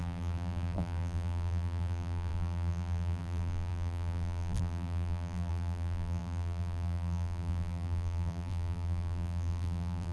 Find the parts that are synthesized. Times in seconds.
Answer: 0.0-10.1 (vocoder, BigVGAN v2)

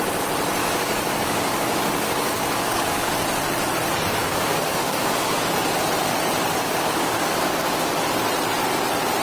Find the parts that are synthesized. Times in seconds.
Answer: 0.6-3.1 (codec, DAC); 4.2-5.4; 6.5-8.0

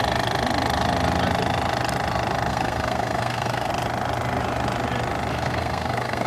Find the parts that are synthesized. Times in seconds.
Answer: 2.5-3.7 (codec, SNAC); 5.3-6.3

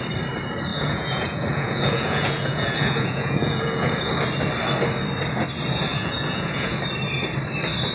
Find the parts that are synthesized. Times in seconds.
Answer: 0.7-4.1 (vocoder, Vocos); 5.9-6.8

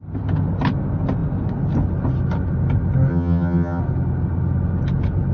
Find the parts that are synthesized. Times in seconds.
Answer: 3.1-3.8 (vocoder, HiFi-GAN)

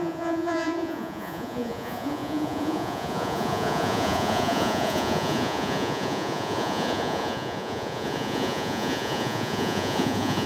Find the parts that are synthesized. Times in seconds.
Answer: 0.0-10.5 (vocoder, Vocos)